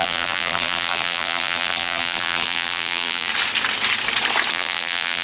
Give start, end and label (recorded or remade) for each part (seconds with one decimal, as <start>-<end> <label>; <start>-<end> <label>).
0.0-3.3 remade; 3.3-4.5 recorded; 4.5-5.2 remade